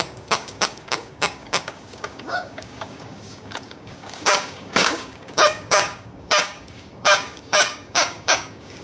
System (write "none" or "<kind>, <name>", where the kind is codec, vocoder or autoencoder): codec, DAC